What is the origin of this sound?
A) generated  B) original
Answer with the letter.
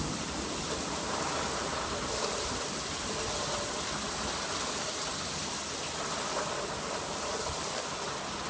B